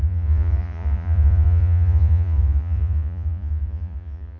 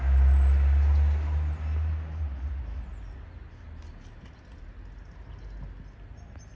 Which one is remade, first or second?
first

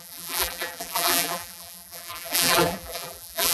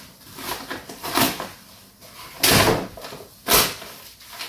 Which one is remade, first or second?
first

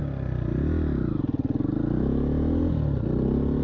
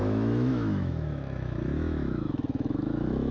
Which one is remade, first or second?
second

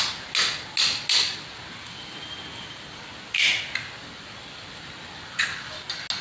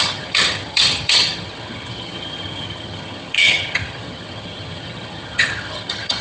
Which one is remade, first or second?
second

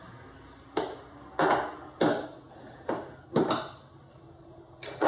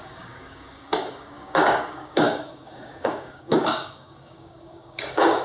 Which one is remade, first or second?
second